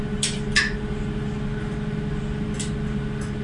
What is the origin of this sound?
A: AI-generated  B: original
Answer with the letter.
B